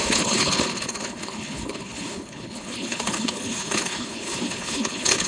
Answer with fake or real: fake